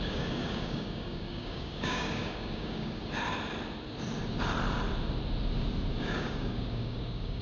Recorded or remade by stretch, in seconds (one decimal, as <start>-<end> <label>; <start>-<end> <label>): 0.0-3.0 remade; 3.0-5.9 recorded; 5.9-7.4 remade